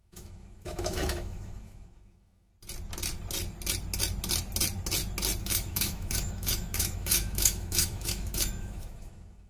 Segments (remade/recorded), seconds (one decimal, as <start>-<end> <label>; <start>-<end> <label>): 0.0-2.5 remade; 2.5-5.4 recorded; 5.4-9.5 remade